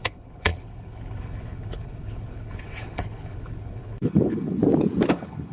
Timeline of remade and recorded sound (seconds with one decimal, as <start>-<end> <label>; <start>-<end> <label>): 0.0-4.6 remade; 4.6-5.1 recorded; 5.1-5.5 remade